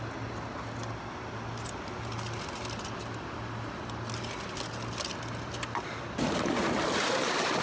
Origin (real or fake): real